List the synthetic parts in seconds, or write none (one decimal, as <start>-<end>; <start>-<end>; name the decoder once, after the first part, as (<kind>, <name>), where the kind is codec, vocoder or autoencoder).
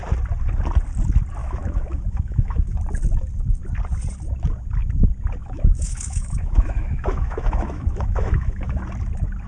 1.4-2.8 (autoencoder, DAC-VAE); 5.4-8.8